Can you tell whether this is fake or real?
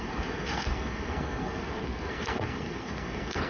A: fake